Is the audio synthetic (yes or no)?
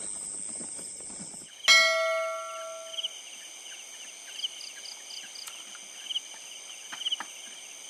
no